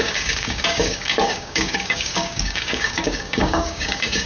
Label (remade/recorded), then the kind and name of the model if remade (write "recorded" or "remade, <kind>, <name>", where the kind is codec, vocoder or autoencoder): remade, codec, DAC